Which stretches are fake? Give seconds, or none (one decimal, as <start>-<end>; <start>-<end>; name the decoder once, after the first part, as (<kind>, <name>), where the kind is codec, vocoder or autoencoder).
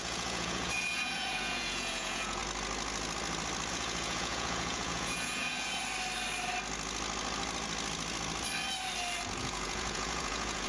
0.0-2.4 (vocoder, Vocos); 3.7-5.8; 9.4-10.7